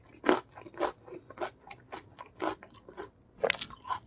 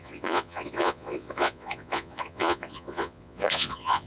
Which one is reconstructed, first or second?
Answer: second